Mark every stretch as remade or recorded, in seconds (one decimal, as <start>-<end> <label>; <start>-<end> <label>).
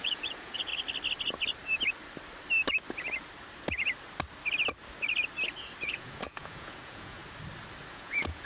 0.0-0.7 remade; 0.7-5.8 recorded; 5.8-7.2 remade; 7.2-7.9 recorded; 7.9-8.5 remade